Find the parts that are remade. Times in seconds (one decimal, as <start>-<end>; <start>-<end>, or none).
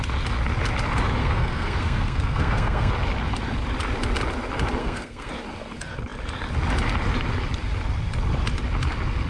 1.2-2.9; 4.8-5.3